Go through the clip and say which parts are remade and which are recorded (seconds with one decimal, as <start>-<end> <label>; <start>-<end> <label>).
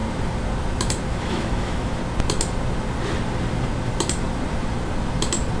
0.0-1.1 recorded; 1.1-2.0 remade; 2.0-5.6 recorded